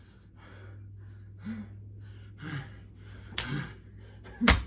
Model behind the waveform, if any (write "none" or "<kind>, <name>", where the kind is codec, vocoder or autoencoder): none